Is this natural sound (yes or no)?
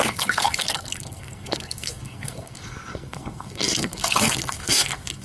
no